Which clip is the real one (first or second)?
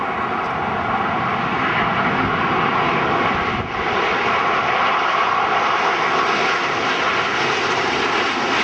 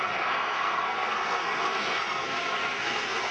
first